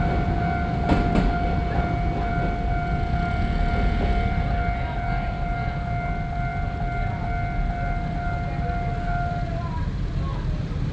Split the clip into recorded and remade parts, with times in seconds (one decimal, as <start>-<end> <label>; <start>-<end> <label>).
0.0-10.9 recorded